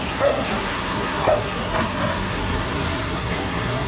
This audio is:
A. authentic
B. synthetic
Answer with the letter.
B